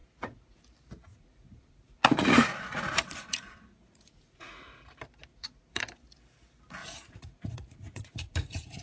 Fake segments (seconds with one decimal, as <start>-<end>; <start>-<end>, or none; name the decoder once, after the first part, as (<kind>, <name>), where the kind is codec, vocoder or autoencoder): 0.0-0.6 (vocoder, Vocos); 1.1-4.8; 5.3-5.8; 6.8-8.8